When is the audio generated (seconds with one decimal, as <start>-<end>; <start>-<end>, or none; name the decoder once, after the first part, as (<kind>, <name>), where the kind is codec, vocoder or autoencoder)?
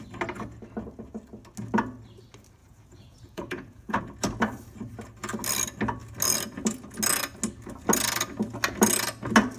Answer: 2.6-4.0 (vocoder, Vocos)